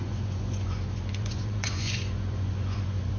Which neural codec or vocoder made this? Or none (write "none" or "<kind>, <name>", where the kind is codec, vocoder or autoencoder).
vocoder, Vocos